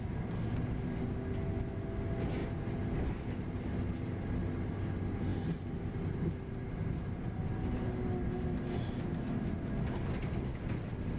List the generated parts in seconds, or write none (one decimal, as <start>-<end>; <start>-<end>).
none

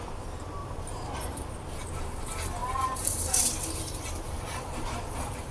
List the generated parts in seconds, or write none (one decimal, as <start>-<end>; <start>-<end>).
0.6-1.5; 2.6-4.4